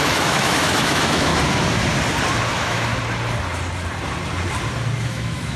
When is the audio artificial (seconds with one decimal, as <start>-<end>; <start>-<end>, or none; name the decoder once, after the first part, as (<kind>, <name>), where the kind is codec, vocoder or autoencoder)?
0.0-1.3 (autoencoder, DAC-VAE); 2.5-2.9; 5.0-5.6